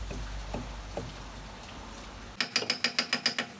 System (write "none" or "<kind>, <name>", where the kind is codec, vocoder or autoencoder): none